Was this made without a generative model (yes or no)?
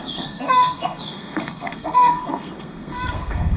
no